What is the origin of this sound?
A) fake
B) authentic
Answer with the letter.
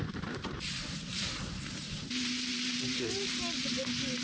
A